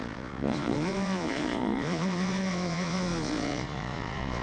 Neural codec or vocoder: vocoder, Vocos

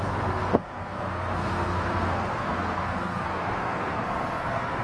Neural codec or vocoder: codec, SNAC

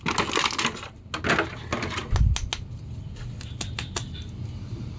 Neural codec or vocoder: none